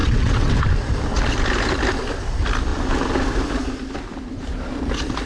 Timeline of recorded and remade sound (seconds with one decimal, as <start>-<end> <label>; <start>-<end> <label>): 0.0-0.5 remade; 0.5-5.3 recorded

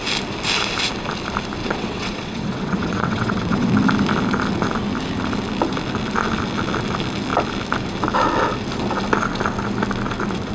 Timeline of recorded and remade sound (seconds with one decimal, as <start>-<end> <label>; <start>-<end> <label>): 0.0-1.6 recorded; 1.6-3.7 remade; 3.7-10.5 recorded

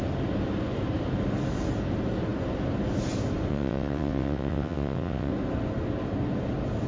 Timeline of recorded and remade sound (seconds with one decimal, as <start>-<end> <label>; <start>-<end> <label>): 0.0-3.5 recorded; 3.5-5.3 remade; 5.3-6.9 recorded

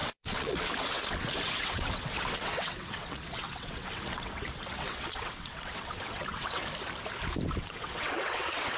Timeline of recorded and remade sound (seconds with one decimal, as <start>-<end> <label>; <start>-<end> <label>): 0.0-6.6 remade; 6.6-7.6 recorded; 7.6-8.8 remade

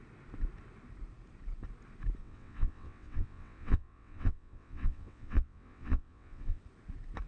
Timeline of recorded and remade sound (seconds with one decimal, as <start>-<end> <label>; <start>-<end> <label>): 0.0-2.2 recorded; 2.2-6.6 remade; 6.6-7.3 recorded

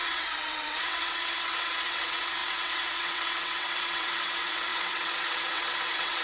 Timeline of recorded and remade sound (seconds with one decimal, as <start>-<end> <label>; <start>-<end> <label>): 0.0-6.2 remade

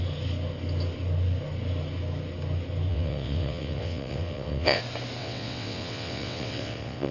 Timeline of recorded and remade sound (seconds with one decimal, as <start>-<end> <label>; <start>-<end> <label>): 0.0-2.9 recorded; 2.9-4.8 remade; 4.8-5.2 recorded; 5.2-7.1 remade